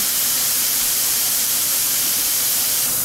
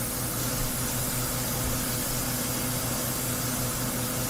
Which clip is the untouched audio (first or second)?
second